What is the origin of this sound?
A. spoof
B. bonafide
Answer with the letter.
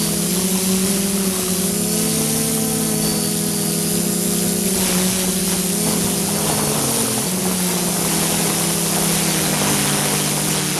B